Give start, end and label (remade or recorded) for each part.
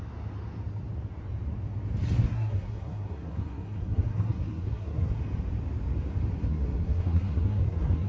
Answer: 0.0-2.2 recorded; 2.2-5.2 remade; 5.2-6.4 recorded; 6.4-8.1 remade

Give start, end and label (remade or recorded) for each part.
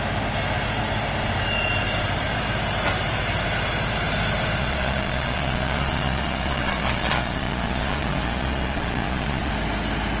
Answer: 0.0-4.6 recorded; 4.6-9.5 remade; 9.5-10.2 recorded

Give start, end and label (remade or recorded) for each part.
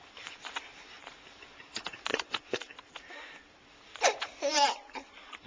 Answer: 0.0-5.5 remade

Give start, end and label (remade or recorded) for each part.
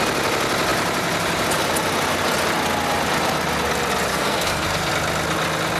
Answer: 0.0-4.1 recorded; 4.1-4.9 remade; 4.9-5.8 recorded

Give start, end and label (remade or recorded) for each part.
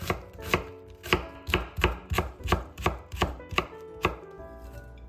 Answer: 0.0-2.0 recorded; 2.0-3.6 remade; 3.6-5.1 recorded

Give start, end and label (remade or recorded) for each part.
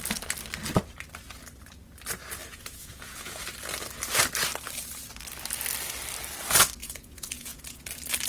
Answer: 0.0-2.5 recorded; 2.5-3.4 remade; 3.4-6.8 recorded; 6.8-7.8 remade; 7.8-8.3 recorded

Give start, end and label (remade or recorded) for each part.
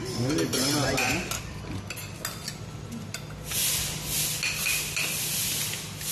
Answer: 0.0-6.1 recorded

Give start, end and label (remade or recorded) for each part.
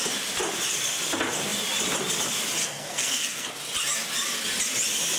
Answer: 0.0-2.6 recorded; 2.6-3.5 remade; 3.5-5.2 recorded